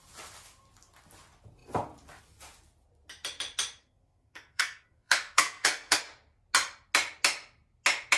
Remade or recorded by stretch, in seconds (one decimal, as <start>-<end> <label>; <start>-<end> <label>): 0.0-3.8 recorded; 3.8-6.0 remade; 6.0-8.2 recorded